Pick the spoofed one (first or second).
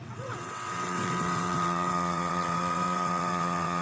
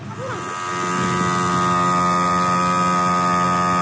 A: first